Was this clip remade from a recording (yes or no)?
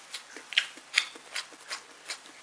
yes